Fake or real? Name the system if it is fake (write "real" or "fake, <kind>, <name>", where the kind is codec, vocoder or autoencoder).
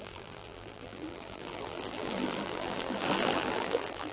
fake, vocoder, BigVGAN v2